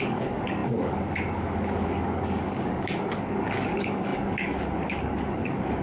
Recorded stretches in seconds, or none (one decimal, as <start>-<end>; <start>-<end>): none